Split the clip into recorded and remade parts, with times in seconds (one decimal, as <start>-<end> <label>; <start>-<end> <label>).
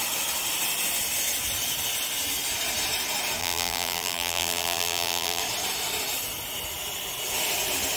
0.0-3.4 recorded; 3.4-5.4 remade; 5.4-8.0 recorded